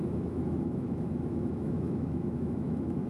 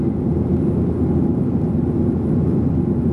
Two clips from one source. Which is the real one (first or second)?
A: second